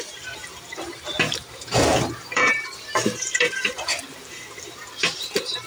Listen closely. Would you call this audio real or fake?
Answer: fake